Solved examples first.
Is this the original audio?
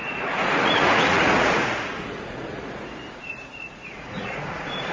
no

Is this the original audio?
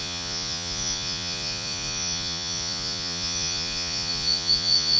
no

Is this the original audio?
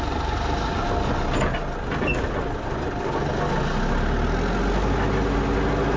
yes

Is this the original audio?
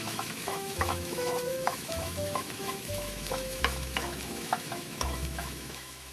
no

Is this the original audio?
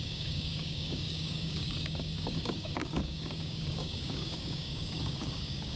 no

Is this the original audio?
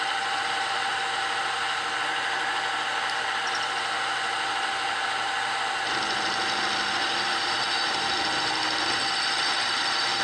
yes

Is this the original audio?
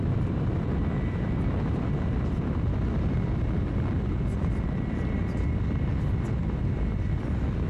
yes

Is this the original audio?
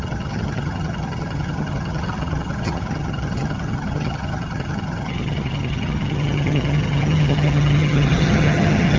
no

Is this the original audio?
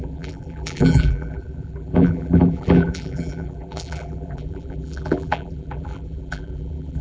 no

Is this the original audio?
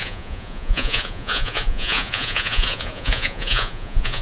no